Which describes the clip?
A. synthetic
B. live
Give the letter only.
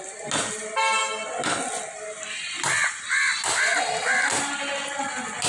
B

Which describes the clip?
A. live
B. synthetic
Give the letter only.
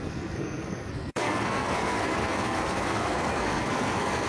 B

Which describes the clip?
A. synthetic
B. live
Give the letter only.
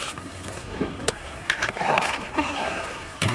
A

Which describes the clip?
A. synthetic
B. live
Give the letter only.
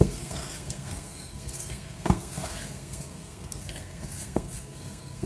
A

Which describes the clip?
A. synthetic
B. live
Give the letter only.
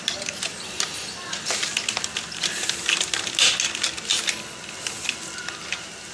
B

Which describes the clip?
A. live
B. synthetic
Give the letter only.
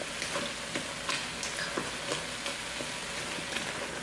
A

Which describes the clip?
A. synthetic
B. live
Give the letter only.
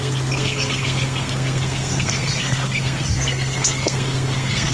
A